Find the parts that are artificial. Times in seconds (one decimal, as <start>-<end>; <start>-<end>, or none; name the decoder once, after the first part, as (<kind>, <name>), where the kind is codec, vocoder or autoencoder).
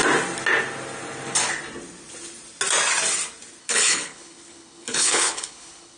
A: 3.6-6.0 (codec, HILCodec)